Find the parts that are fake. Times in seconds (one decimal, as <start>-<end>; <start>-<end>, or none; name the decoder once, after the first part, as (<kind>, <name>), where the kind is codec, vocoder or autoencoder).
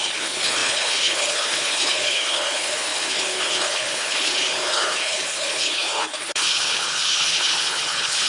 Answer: 0.0-8.3 (codec, HILCodec)